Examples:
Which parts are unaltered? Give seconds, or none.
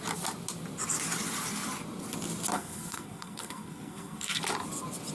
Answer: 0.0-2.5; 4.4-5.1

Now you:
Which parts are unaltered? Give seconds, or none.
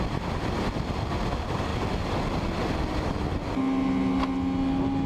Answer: 0.0-5.1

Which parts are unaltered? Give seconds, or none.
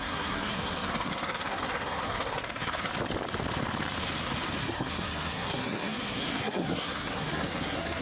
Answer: 2.9-4.6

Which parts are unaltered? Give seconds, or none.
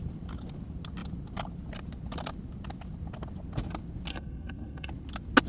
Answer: 0.0-4.1; 4.9-5.5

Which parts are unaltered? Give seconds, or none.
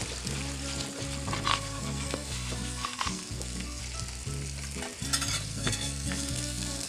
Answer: 0.0-1.5; 3.8-5.5